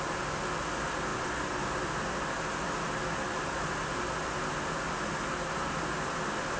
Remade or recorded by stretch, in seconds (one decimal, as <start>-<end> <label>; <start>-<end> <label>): 0.0-6.6 recorded